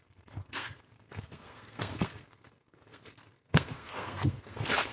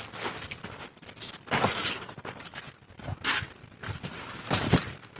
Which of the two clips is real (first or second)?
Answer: second